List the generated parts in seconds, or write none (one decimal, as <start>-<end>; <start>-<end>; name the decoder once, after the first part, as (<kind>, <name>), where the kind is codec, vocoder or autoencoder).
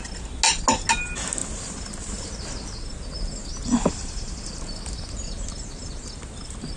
none